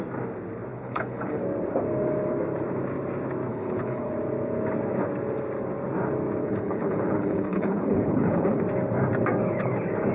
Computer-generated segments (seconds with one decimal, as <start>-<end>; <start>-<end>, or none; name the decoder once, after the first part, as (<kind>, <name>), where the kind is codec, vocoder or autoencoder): 0.7-1.4 (codec, HILCodec); 3.5-4.1; 6.4-8.6